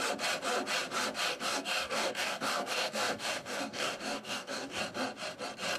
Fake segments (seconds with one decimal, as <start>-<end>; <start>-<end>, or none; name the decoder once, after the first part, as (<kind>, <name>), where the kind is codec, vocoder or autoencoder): 1.3-4.8 (codec, DAC)